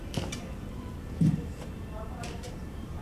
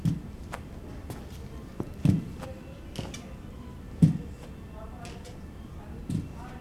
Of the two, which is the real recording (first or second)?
second